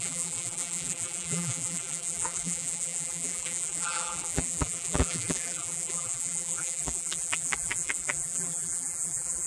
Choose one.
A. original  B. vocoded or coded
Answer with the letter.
B